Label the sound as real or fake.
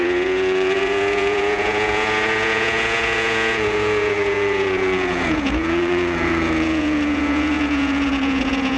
fake